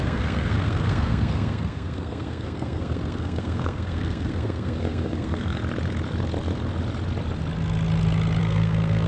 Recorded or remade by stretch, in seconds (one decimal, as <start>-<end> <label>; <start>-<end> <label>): 0.0-5.6 remade; 5.6-8.4 recorded; 8.4-9.1 remade